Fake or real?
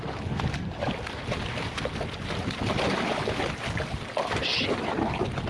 real